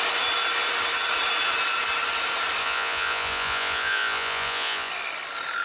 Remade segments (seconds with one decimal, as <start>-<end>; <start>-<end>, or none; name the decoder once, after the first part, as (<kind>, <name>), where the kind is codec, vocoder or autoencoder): 2.6-4.9 (vocoder, Vocos)